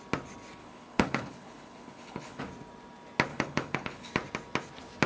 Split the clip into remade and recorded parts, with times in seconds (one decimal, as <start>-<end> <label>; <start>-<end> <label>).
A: 0.0-0.6 recorded; 0.6-2.4 remade; 2.4-3.3 recorded; 3.3-4.1 remade; 4.1-5.1 recorded